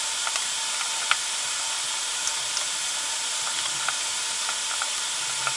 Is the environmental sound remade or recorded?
recorded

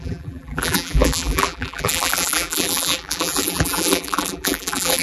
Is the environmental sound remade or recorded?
remade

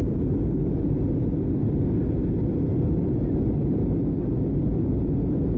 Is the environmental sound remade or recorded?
recorded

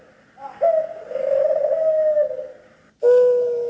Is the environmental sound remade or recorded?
recorded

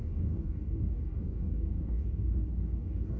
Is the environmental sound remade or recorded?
remade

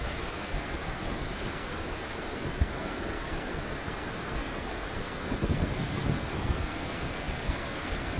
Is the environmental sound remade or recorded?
remade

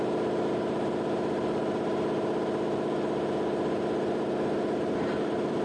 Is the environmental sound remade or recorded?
recorded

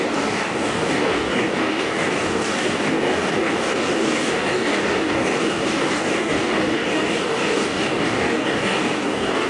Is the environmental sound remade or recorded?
remade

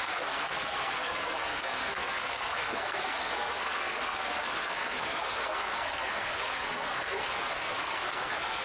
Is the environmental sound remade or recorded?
remade